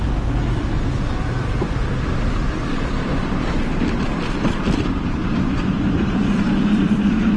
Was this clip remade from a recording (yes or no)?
yes